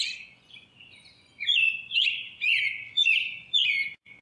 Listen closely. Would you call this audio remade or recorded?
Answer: remade